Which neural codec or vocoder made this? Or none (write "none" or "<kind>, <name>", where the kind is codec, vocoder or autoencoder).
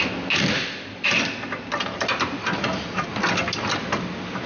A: none